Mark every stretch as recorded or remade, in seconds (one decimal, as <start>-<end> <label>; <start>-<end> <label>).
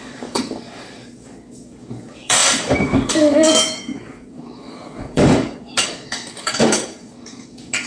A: 0.0-7.9 remade